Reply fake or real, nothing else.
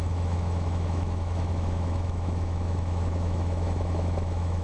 fake